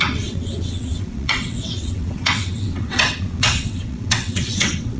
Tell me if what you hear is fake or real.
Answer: fake